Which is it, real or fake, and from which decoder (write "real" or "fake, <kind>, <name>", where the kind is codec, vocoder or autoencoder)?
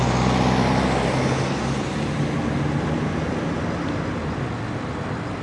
real